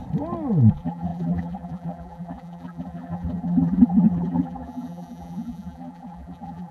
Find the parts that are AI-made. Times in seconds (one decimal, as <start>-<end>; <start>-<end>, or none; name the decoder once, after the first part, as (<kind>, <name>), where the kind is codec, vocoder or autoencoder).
0.7-6.7 (vocoder, BigVGAN v2)